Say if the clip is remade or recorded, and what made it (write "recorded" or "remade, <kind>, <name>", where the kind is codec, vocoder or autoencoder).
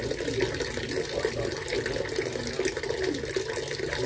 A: recorded